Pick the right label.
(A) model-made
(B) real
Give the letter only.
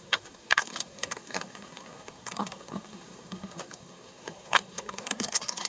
A